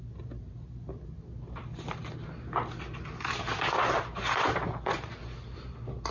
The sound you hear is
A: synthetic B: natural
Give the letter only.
B